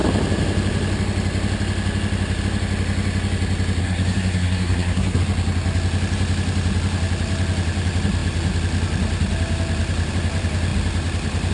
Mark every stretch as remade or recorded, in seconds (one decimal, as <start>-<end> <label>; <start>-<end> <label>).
0.0-3.8 recorded; 3.8-5.2 remade; 5.2-11.5 recorded